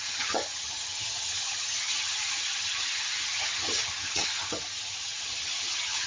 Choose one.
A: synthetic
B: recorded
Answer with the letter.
A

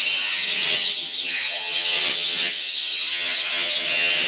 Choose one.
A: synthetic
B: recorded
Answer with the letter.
A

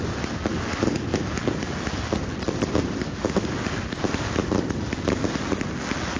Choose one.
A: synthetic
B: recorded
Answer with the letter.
B